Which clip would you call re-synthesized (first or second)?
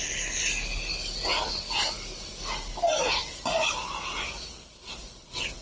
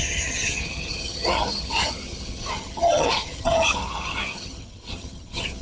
second